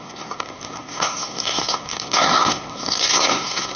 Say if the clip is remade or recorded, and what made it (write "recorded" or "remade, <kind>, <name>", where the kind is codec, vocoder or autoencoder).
remade, codec, SNAC